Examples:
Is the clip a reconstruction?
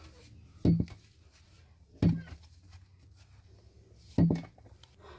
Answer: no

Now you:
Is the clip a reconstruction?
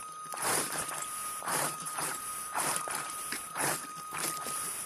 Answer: yes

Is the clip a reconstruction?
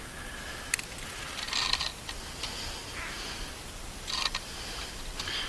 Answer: no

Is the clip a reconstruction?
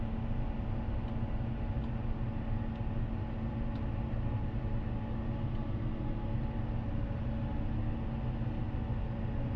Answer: no